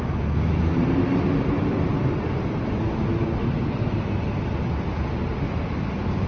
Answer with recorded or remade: recorded